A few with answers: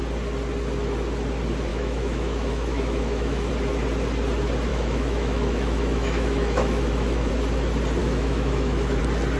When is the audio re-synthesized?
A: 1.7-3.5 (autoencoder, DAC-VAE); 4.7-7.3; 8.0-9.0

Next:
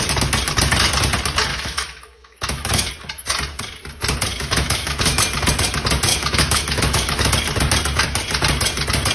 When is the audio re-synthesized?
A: 1.5-2.9 (autoencoder, DAC-VAE); 4.3-5.2; 6.1-7.3

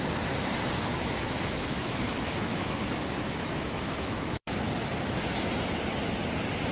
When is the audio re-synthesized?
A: 0.9-4.7 (autoencoder, DAC-VAE)

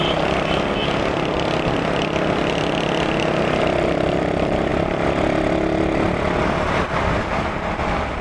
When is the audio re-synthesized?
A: none

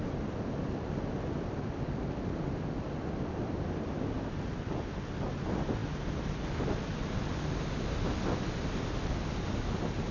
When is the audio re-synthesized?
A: none

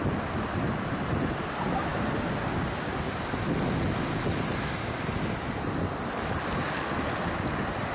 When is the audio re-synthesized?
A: none